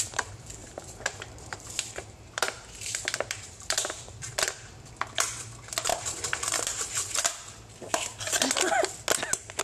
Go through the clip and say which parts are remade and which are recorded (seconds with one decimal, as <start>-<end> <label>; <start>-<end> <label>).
0.0-0.6 recorded; 0.6-4.9 remade; 4.9-5.9 recorded; 5.9-7.2 remade; 7.2-9.6 recorded